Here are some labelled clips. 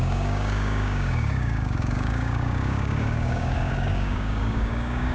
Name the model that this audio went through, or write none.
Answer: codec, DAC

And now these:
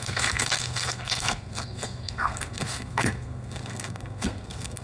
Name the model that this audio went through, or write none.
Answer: codec, SNAC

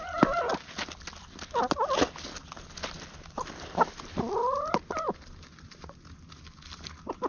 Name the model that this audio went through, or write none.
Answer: none